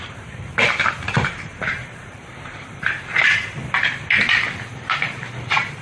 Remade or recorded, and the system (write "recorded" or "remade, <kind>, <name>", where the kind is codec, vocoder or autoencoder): remade, vocoder, BigVGAN v2